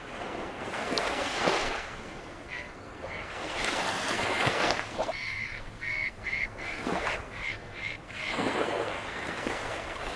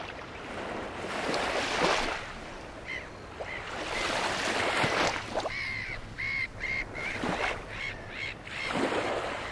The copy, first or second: first